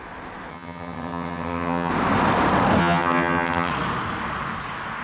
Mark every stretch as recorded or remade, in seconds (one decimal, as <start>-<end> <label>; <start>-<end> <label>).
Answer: 0.0-0.5 recorded; 0.5-1.9 remade; 1.9-2.8 recorded; 2.8-3.7 remade; 3.7-5.0 recorded